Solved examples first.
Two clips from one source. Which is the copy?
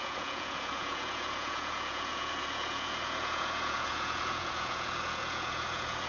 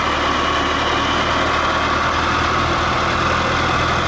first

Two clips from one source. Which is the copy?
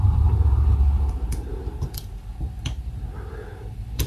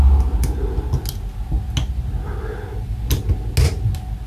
first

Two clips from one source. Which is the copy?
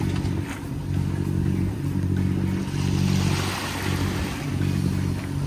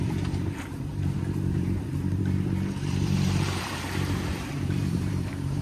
second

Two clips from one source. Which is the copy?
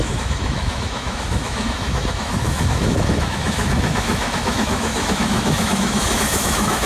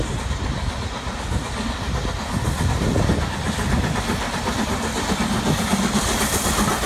first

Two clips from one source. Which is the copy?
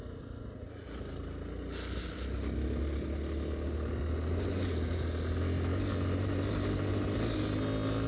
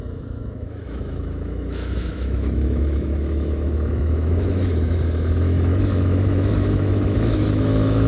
second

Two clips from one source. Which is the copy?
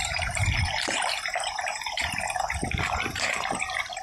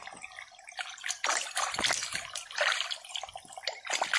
first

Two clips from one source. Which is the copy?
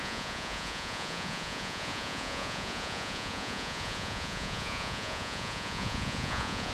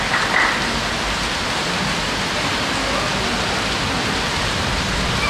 first